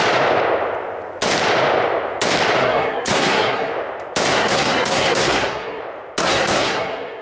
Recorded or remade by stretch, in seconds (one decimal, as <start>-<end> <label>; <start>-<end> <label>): 0.0-2.6 recorded; 2.6-3.7 remade; 3.7-4.3 recorded; 4.3-5.8 remade; 5.8-6.2 recorded; 6.2-7.2 remade